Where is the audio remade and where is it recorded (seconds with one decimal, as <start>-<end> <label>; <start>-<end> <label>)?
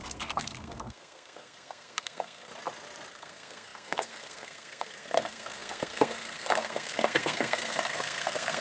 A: 0.0-2.5 remade; 2.5-3.1 recorded; 3.1-8.6 remade